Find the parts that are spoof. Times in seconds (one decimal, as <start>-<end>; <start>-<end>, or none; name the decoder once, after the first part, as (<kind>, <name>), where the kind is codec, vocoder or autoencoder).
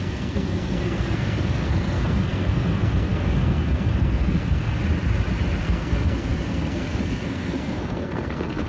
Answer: 0.0-4.8 (codec, SNAC); 5.6-8.7